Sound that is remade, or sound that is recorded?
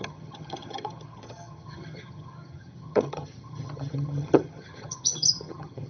remade